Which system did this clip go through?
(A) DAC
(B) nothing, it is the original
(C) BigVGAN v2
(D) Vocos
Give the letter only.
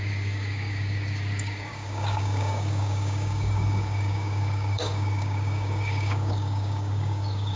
A